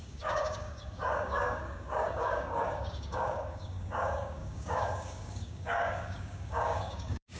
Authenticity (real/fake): fake